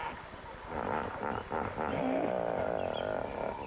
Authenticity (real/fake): real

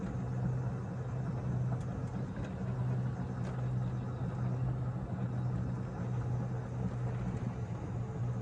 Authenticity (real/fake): real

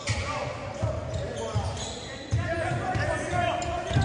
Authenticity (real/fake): real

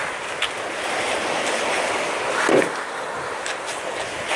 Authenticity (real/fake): real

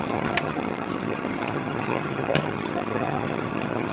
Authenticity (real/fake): fake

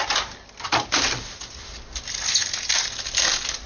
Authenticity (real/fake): real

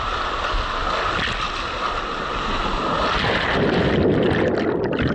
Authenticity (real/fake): real